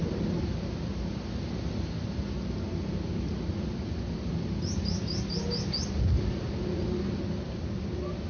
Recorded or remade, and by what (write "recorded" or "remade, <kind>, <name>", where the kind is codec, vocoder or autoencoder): recorded